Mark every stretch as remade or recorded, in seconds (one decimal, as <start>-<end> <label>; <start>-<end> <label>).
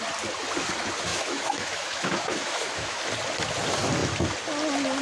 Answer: 0.0-1.1 recorded; 1.1-3.0 remade; 3.0-5.0 recorded